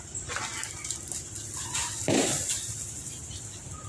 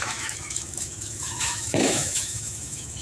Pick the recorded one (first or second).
first